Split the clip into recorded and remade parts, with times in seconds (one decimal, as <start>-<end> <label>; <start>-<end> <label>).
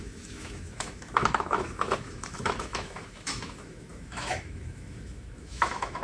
0.0-6.0 remade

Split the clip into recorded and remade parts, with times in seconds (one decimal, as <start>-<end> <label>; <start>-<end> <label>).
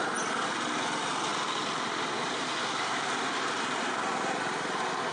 0.0-5.1 recorded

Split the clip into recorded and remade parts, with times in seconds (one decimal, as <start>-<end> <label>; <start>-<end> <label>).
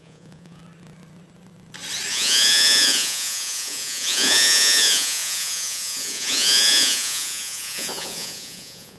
0.0-0.6 remade; 0.6-2.1 recorded; 2.1-9.0 remade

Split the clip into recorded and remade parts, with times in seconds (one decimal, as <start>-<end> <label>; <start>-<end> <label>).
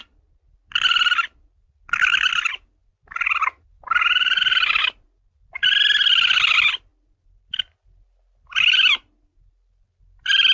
0.0-10.5 recorded